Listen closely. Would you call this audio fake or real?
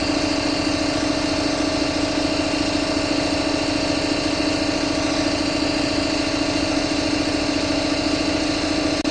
real